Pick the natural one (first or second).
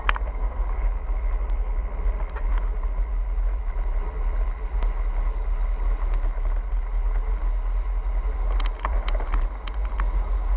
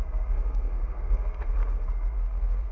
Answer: first